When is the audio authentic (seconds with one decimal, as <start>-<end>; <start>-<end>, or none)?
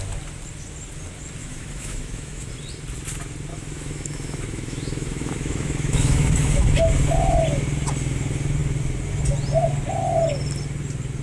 0.0-1.4; 2.5-3.5; 6.8-11.2